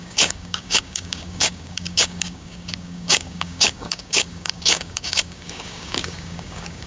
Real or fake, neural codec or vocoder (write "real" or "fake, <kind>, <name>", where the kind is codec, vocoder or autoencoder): fake, codec, DAC